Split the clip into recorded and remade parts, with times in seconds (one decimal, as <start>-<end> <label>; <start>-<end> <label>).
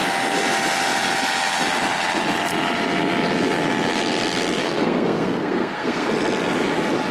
0.0-4.6 recorded; 4.6-6.1 remade; 6.1-7.1 recorded